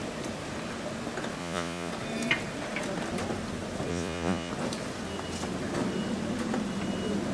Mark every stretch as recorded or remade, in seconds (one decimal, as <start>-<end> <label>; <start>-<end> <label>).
0.0-1.4 recorded; 1.4-1.9 remade; 1.9-3.9 recorded; 3.9-4.5 remade; 4.5-7.3 recorded